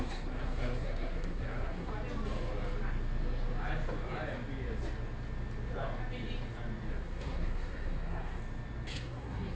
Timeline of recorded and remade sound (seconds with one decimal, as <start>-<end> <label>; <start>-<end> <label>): 0.0-1.9 remade; 1.9-6.9 recorded; 6.9-8.4 remade; 8.4-8.9 recorded; 8.9-9.6 remade